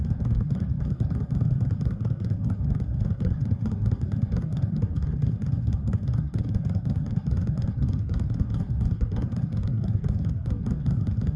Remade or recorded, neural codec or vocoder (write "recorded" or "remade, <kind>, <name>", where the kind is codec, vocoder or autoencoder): remade, codec, SNAC